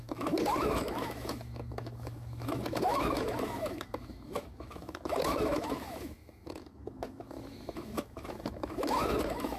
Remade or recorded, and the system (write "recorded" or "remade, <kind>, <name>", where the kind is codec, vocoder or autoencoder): remade, autoencoder, DAC-VAE